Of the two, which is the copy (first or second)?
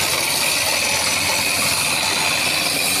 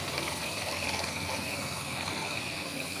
second